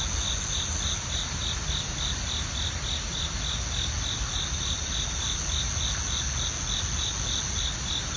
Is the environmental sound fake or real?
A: real